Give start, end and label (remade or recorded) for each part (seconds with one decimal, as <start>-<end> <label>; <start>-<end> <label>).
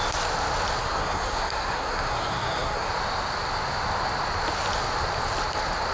0.0-0.8 recorded; 0.8-2.9 remade; 2.9-5.9 recorded